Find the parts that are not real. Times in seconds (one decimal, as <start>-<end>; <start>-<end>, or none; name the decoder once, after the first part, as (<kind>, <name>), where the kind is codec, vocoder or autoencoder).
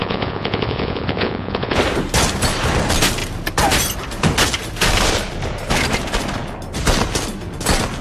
0.0-1.8 (vocoder, Vocos)